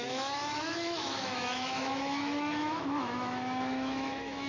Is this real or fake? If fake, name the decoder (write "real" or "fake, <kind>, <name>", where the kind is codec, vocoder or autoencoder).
fake, autoencoder, DAC-VAE